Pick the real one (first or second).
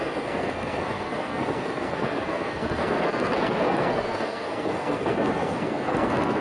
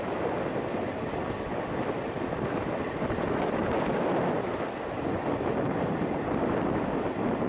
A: second